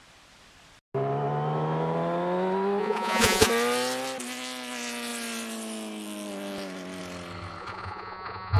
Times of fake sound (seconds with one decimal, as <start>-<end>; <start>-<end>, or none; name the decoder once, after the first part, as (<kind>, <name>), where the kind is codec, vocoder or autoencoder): 2.8-3.5 (vocoder, Vocos); 7.6-8.6